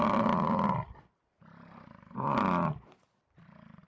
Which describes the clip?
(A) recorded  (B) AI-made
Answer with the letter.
B